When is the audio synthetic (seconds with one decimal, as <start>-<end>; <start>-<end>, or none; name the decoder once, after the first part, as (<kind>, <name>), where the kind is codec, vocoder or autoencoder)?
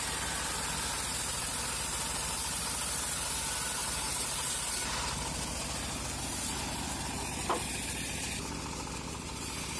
3.8-4.6 (vocoder, BigVGAN v2)